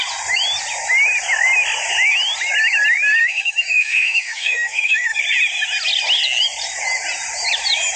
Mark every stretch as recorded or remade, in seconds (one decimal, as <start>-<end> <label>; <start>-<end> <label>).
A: 0.0-3.2 recorded; 3.2-5.2 remade; 5.2-8.0 recorded